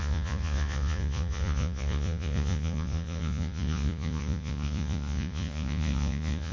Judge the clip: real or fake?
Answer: fake